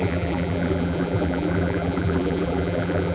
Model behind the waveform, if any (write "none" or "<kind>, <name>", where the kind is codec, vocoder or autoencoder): vocoder, BigVGAN v2